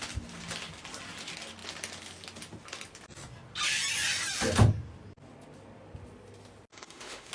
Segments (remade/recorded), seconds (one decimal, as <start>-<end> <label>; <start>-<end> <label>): 0.0-6.7 recorded; 6.7-7.3 remade